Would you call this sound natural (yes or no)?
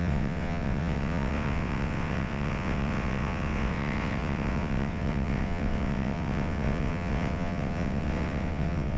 no